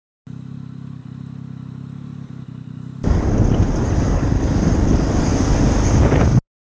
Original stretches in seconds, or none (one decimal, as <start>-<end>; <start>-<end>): 0.0-6.7